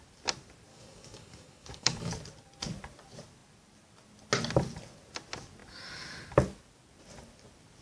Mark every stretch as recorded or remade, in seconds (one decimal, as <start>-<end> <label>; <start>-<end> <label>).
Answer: 0.0-0.7 recorded; 0.7-2.1 remade; 2.1-7.8 recorded